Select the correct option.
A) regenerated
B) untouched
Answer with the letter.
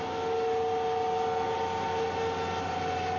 B